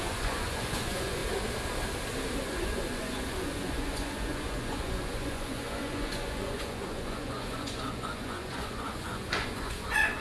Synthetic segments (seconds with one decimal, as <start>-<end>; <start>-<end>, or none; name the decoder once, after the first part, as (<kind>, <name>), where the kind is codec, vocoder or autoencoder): 0.0-1.2 (vocoder, Vocos); 2.4-10.2

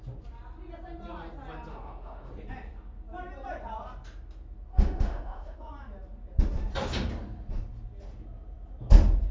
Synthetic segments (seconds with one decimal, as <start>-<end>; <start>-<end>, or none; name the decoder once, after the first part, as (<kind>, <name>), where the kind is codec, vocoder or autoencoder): 1.7-2.3 (autoencoder, DAC-VAE); 4.7-5.7

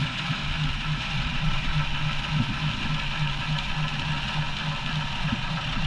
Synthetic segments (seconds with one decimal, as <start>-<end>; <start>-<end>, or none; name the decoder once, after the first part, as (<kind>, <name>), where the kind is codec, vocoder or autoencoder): 0.0-0.4 (vocoder, Vocos); 1.0-1.7; 5.2-5.9

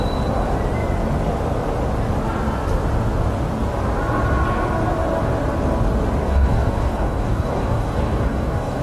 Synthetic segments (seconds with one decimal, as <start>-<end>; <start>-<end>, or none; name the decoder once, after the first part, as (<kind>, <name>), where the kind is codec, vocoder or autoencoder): 6.2-8.8 (codec, DAC)

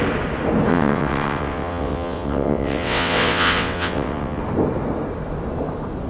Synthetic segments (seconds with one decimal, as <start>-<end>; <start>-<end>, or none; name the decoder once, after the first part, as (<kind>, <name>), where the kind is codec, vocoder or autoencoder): 0.7-4.4 (vocoder, WaveNeXt)